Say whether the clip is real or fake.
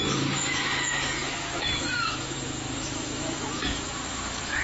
fake